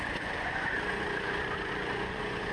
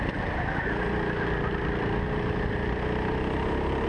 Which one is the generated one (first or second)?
first